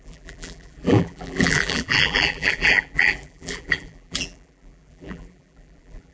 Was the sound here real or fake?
fake